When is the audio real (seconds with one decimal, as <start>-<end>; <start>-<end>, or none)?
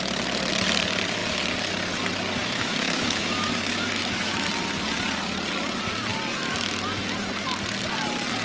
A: 0.0-2.4; 4.5-8.4